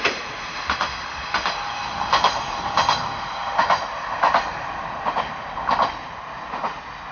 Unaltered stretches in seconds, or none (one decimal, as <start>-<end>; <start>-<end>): 0.0-3.4; 5.9-7.1